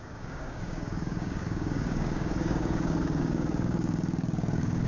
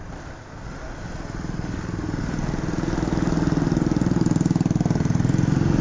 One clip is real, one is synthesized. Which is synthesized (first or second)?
first